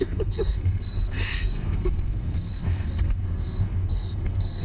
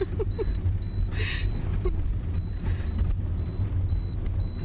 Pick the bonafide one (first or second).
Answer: second